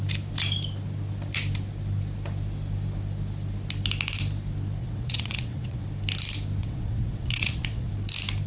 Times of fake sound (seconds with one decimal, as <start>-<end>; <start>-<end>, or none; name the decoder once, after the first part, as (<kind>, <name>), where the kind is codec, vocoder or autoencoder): 4.8-5.8 (vocoder, WaveNeXt); 6.6-7.9